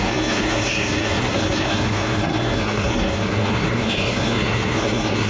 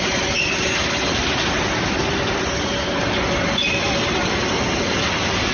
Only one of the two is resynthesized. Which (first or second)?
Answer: first